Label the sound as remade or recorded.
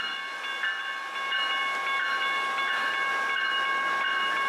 recorded